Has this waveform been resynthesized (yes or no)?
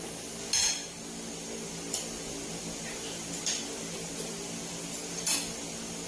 no